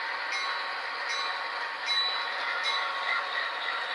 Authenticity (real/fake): real